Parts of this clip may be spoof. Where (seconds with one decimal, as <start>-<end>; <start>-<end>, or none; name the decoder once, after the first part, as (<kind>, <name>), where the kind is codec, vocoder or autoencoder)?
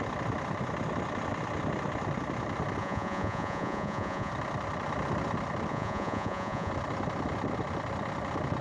2.8-4.3 (vocoder, Vocos); 5.7-6.7